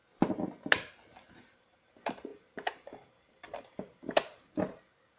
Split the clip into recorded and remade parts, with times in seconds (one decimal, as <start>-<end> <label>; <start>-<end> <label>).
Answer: 0.0-1.3 recorded; 1.3-5.2 remade